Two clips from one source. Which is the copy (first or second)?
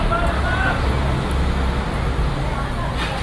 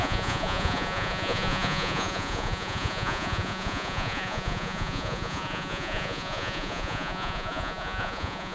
second